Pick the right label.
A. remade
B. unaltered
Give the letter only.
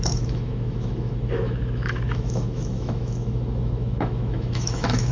A